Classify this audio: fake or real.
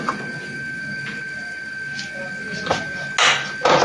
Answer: real